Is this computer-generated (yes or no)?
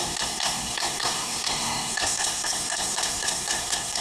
yes